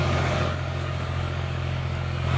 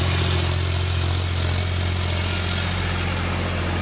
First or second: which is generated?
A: first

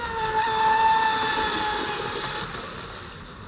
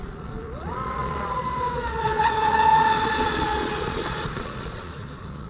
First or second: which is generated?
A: second